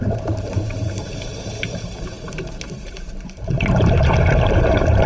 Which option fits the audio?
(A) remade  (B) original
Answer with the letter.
A